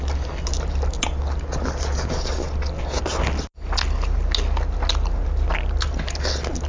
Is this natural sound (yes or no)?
yes